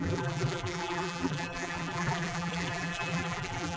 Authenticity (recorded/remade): remade